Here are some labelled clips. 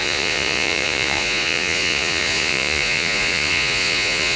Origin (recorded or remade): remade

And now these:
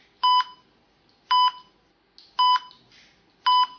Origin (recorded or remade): recorded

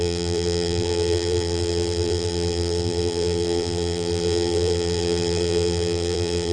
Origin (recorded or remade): remade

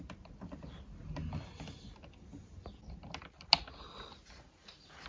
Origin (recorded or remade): recorded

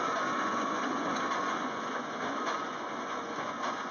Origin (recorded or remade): remade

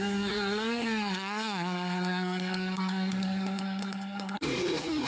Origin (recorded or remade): remade